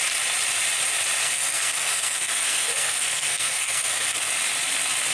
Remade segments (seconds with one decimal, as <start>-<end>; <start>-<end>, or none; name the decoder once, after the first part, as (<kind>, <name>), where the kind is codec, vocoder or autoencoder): 1.2-4.3 (codec, SNAC)